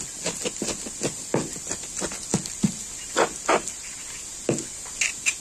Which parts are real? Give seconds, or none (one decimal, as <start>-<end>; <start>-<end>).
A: 0.0-5.4